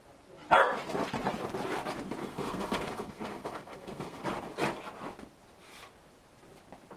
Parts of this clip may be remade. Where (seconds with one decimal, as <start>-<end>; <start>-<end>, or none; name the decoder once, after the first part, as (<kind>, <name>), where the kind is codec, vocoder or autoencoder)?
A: 2.2-4.2 (codec, SNAC)